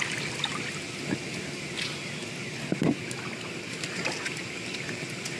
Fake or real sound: real